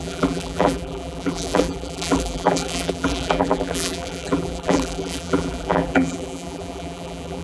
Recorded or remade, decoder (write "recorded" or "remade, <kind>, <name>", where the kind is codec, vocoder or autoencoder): remade, vocoder, BigVGAN v2